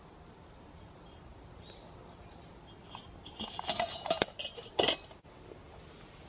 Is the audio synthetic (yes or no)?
no